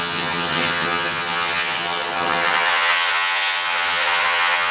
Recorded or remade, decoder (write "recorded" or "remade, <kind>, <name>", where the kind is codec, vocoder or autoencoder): remade, vocoder, HiFi-GAN